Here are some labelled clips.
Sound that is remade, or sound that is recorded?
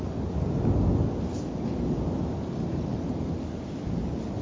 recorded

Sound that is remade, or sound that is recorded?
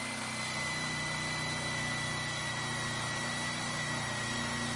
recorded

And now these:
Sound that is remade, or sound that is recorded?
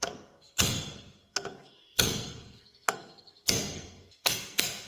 remade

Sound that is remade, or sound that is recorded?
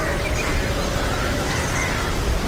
recorded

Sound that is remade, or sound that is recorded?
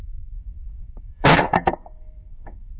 remade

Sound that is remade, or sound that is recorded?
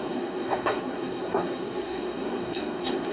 remade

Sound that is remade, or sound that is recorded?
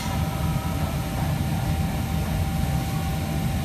recorded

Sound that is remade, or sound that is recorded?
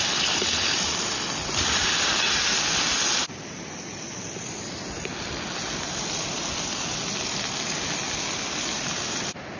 recorded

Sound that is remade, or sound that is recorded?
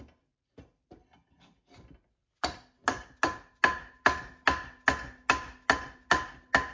recorded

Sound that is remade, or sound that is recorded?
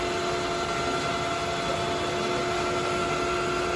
recorded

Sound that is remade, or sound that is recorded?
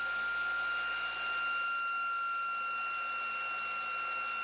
recorded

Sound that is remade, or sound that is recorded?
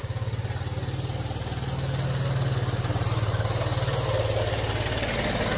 recorded